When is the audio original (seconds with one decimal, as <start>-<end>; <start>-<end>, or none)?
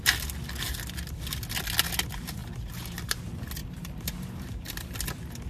0.0-3.6; 4.9-5.5